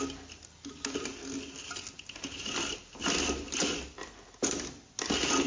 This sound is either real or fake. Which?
real